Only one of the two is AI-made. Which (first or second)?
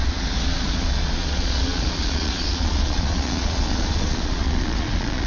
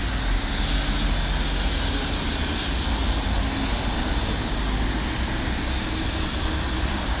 first